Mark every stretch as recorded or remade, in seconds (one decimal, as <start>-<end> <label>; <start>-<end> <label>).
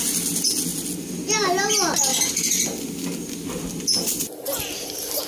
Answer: 0.0-5.3 recorded